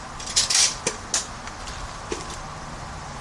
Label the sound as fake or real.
real